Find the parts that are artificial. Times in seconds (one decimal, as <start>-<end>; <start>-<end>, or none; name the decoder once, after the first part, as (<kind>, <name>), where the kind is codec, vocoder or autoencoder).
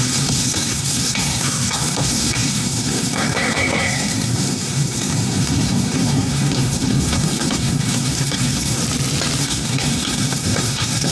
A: 0.0-8.8 (codec, SNAC); 9.4-11.1